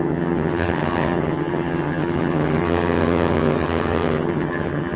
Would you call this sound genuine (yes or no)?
no